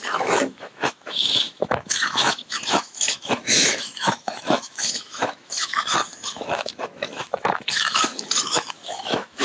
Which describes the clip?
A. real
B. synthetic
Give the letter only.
B